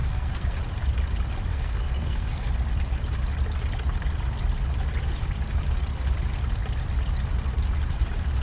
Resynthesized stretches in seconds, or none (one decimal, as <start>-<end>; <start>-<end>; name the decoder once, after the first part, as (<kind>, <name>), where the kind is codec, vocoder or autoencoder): 0.0-0.6 (codec, SNAC); 1.5-2.5